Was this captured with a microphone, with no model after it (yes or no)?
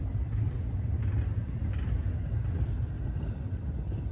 no